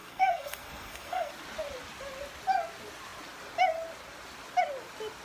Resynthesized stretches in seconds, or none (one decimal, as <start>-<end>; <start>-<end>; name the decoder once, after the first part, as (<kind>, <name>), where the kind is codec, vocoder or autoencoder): 0.0-1.3 (codec, SNAC)